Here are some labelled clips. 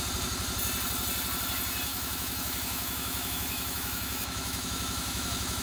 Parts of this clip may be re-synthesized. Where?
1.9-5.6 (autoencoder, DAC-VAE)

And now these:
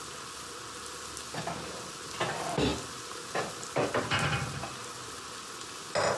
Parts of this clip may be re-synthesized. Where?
none

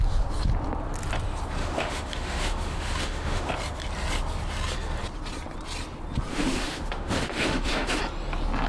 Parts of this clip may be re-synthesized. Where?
1.6-3.5 (autoencoder, DAC-VAE); 6.3-8.0

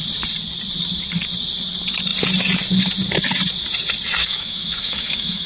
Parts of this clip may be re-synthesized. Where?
4.2-5.5 (autoencoder, DAC-VAE)

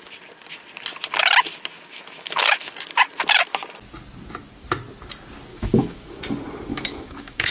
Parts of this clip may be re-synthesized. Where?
1.7-2.7 (autoencoder, DAC-VAE); 5.5-6.2; 6.7-7.5

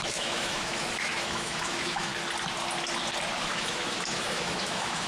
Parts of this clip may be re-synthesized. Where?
0.0-2.1 (autoencoder, DAC-VAE); 3.4-5.1

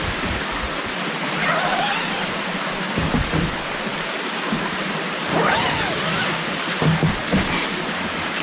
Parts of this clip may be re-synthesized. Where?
none